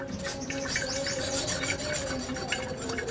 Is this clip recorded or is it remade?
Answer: recorded